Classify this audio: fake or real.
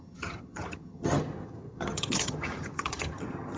fake